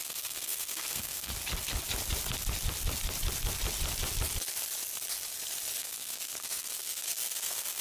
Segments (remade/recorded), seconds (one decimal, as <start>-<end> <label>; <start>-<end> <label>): 0.0-1.3 remade; 1.3-5.8 recorded; 5.8-7.8 remade